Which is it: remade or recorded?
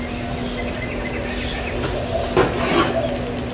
recorded